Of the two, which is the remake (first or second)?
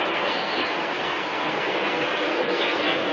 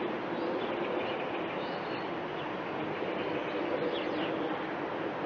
first